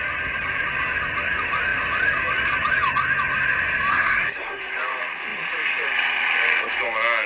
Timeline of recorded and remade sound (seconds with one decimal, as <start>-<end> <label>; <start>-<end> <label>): 0.0-3.9 recorded; 3.9-4.6 remade; 4.6-7.3 recorded